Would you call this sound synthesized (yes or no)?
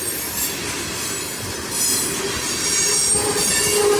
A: no